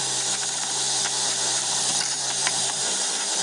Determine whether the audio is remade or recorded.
remade